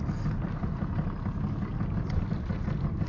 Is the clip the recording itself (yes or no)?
yes